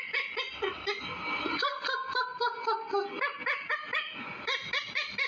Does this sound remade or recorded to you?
recorded